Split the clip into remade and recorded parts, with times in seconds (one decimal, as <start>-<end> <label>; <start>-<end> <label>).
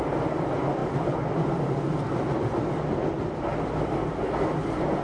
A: 0.0-5.0 recorded